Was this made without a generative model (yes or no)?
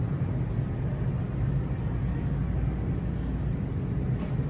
yes